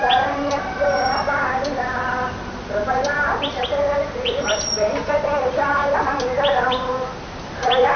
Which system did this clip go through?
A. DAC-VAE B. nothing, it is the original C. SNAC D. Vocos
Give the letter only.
B